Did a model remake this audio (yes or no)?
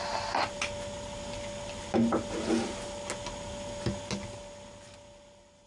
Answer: no